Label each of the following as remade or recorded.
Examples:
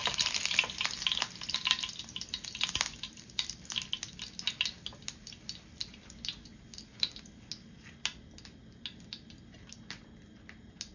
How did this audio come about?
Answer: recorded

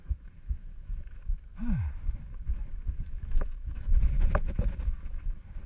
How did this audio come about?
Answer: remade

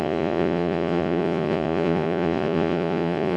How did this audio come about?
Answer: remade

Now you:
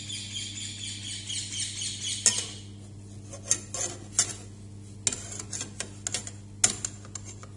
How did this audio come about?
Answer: recorded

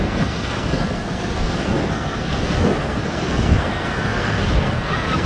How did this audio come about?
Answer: remade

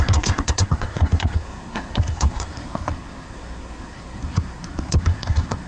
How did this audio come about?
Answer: remade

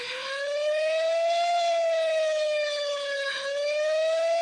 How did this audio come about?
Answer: remade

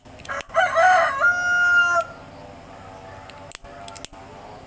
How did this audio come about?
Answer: recorded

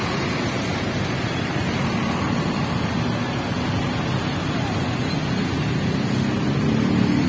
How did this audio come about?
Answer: recorded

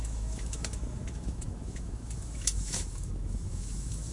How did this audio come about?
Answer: remade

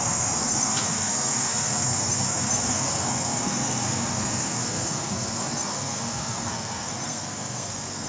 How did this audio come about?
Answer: remade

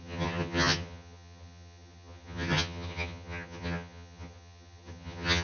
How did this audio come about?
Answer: remade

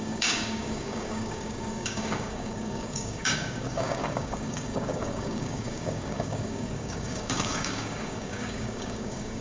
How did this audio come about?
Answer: remade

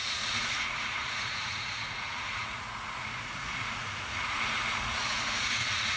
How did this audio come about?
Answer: remade